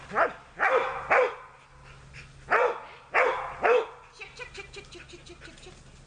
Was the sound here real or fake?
real